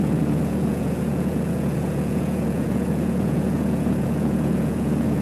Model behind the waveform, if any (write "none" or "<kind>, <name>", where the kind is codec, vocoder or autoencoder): vocoder, Vocos